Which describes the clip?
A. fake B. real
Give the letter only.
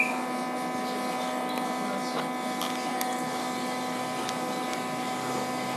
B